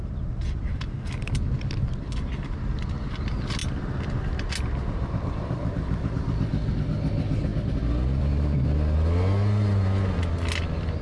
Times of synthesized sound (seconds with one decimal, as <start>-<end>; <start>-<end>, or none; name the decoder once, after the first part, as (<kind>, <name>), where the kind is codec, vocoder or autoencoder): none